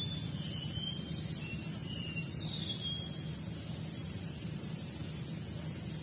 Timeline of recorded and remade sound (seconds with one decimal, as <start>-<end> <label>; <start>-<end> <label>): 0.0-1.8 recorded; 1.8-2.4 remade; 2.4-4.0 recorded; 4.0-4.7 remade; 4.7-6.0 recorded